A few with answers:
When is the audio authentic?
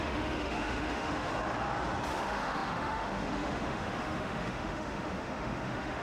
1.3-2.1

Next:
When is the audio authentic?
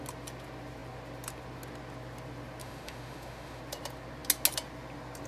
0.0-2.6; 3.6-5.3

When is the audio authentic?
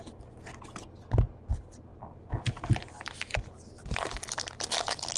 0.0-5.2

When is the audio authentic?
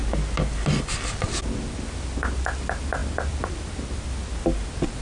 0.0-5.0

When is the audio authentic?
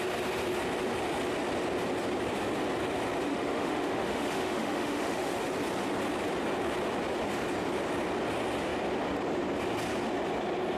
0.0-3.3; 5.4-10.8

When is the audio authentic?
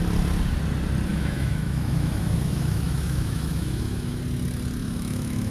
0.0-1.1; 4.2-4.8